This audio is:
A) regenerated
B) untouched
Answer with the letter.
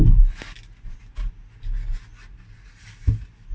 B